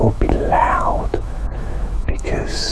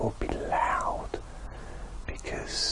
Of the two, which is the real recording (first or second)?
second